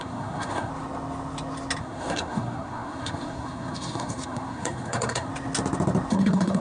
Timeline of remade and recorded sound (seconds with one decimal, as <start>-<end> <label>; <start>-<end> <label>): 0.0-0.7 remade; 0.7-1.8 recorded; 1.8-5.3 remade; 5.3-6.1 recorded; 6.1-6.6 remade